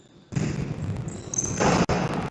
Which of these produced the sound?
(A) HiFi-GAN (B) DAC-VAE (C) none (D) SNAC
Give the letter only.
C